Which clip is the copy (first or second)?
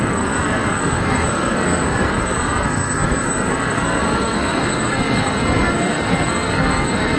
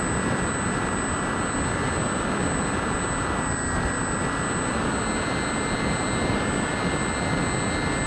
first